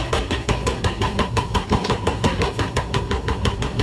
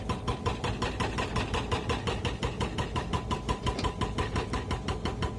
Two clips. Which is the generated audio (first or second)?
first